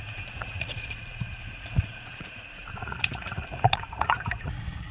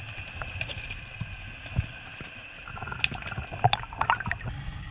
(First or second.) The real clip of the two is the second